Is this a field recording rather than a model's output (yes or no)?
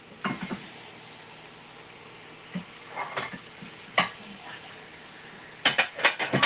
yes